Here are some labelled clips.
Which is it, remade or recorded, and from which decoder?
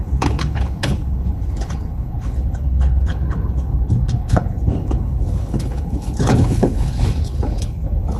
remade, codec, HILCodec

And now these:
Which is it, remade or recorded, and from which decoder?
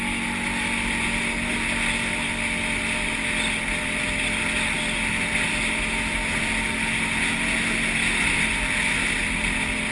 recorded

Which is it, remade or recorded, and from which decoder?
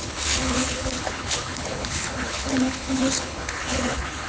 remade, codec, HILCodec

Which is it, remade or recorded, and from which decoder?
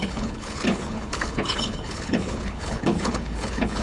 remade, codec, HILCodec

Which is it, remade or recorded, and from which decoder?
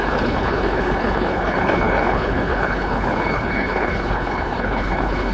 remade, codec, HILCodec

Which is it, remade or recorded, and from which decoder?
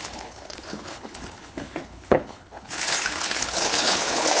remade, codec, HILCodec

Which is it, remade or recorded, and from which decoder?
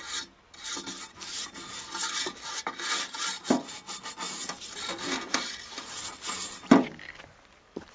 recorded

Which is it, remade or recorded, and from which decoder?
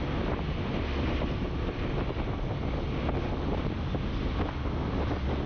recorded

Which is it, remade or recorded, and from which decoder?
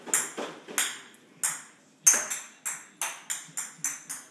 recorded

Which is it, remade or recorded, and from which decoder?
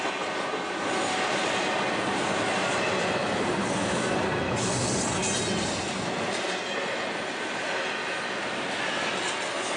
recorded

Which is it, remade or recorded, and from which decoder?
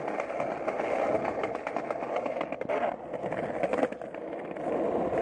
recorded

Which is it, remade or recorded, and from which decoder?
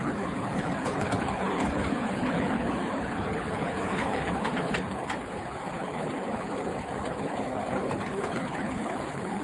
remade, codec, HILCodec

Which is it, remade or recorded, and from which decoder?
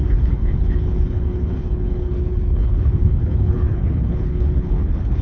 remade, codec, HILCodec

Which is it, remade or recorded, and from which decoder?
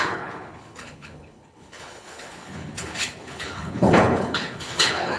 remade, codec, HILCodec